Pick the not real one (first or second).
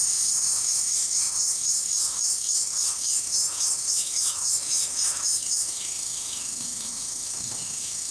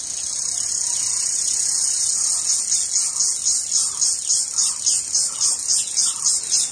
first